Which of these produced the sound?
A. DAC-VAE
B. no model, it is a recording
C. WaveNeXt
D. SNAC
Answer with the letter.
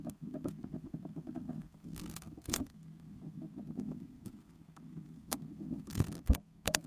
D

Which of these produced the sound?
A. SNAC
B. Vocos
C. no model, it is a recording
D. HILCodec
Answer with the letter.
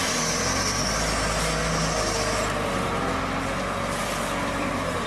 C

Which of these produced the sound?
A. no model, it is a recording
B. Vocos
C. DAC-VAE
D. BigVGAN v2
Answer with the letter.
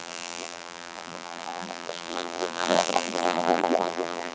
D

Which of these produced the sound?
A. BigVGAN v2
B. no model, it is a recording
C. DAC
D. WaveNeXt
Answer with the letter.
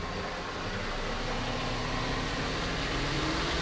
B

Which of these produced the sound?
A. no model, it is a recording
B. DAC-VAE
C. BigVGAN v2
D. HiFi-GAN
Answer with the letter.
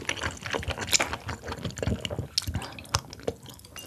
A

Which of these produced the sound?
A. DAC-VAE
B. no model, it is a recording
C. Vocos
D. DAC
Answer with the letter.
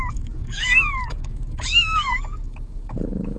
D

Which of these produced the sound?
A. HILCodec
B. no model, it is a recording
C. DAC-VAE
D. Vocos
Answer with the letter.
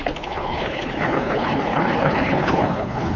A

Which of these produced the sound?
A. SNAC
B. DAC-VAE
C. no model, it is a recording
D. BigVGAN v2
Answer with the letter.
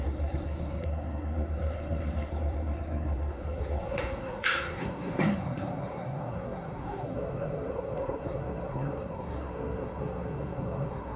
A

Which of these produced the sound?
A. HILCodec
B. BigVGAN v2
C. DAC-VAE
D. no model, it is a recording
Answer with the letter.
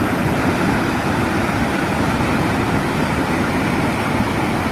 D